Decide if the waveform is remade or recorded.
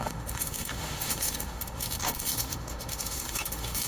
remade